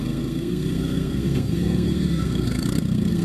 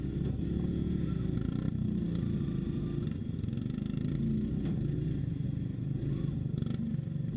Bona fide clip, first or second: second